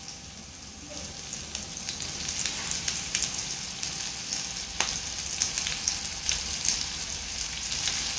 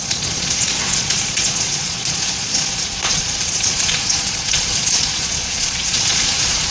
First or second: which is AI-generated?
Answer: second